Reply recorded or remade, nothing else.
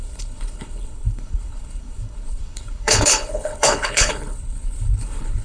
remade